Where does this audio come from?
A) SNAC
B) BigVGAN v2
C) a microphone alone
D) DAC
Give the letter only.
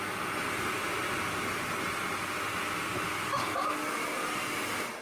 C